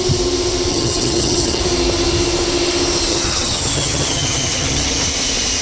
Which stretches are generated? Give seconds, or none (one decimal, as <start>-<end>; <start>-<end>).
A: 0.7-1.6; 3.1-5.0